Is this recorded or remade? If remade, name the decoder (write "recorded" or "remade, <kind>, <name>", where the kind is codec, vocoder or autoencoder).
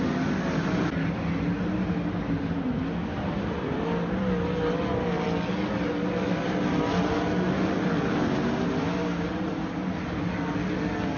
recorded